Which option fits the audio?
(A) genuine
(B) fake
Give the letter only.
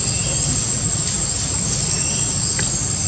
A